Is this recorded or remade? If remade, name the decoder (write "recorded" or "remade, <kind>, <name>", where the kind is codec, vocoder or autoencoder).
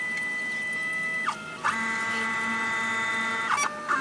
recorded